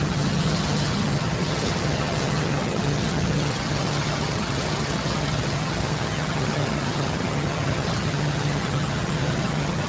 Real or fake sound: fake